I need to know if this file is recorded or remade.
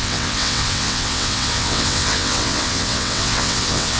remade